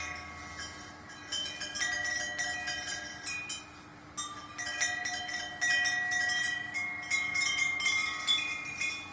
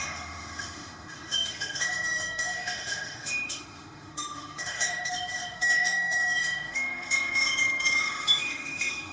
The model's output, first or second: second